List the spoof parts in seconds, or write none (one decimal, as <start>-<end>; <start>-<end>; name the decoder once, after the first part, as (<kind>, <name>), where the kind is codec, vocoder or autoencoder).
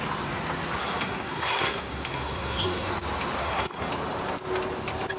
0.8-2.9 (codec, SNAC); 3.4-3.9